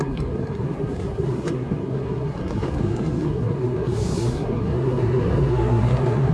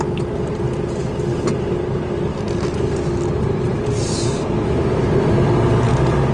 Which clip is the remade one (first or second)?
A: first